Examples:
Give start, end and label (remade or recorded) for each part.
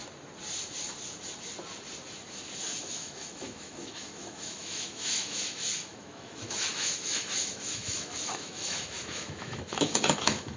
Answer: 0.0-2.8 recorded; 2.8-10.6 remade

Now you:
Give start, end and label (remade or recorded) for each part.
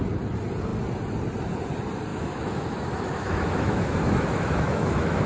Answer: 0.0-2.1 recorded; 2.1-5.3 remade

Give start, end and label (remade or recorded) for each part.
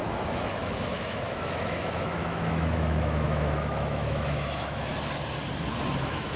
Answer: 0.0-4.9 remade; 4.9-6.0 recorded; 6.0-6.4 remade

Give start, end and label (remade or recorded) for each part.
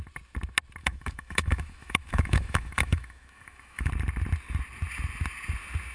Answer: 0.0-0.8 recorded; 0.8-3.9 remade; 3.9-5.9 recorded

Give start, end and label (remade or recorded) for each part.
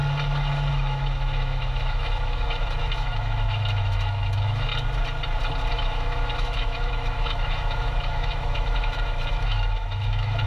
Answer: 0.0-0.7 recorded; 0.7-4.7 remade; 4.7-5.7 recorded; 5.7-10.5 remade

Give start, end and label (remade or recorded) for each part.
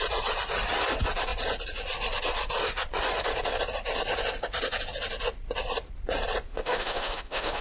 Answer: 0.0-6.5 recorded; 6.5-7.6 remade